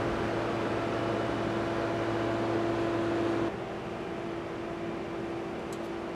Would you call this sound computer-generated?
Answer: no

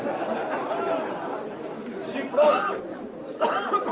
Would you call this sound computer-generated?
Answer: yes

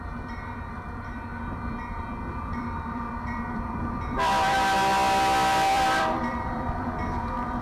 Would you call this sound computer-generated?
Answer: yes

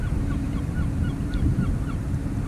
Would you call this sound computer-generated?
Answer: yes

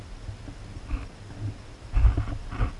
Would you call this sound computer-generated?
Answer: no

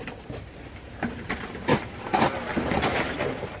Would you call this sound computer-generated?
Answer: yes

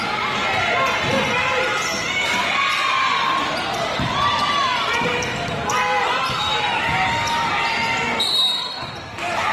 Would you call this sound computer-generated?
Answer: yes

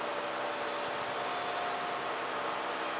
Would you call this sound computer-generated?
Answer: no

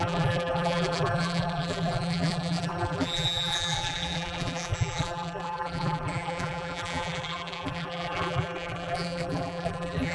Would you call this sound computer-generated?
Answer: yes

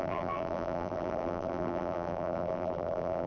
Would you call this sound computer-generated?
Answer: yes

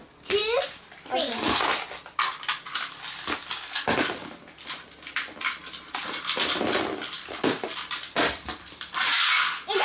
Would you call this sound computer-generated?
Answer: no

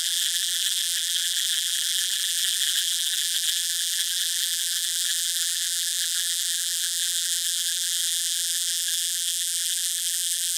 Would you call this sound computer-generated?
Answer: yes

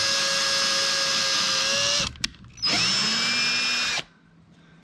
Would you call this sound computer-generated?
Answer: no